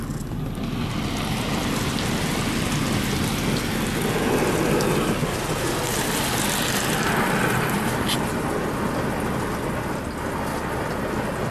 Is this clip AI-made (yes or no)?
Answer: no